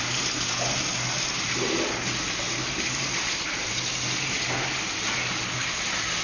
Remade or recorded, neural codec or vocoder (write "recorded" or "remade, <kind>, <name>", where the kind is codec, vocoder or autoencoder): recorded